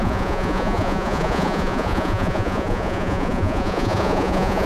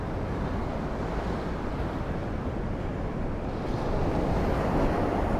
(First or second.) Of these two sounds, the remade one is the first